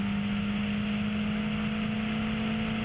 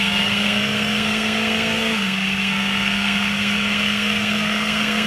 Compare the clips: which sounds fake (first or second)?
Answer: second